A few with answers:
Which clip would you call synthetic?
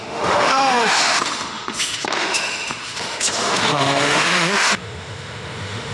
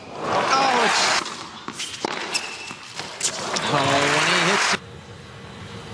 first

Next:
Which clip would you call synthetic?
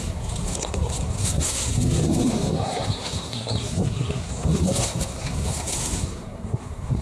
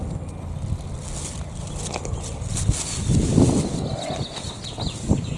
first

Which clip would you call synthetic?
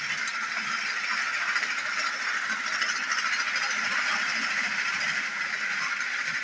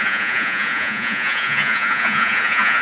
second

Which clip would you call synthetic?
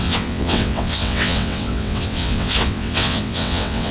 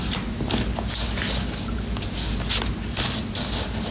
first